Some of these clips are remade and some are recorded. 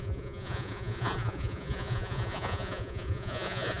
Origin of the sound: remade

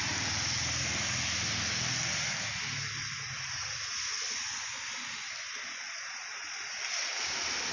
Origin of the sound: recorded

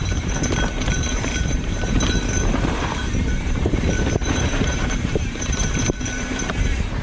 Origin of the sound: remade